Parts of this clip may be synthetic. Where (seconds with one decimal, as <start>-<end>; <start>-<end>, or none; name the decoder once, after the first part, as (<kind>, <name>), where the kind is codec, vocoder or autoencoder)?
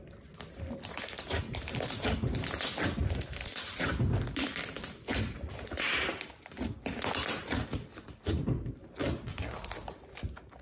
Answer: none